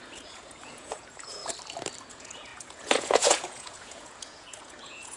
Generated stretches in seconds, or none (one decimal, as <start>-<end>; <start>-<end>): 0.0-1.4; 2.1-5.2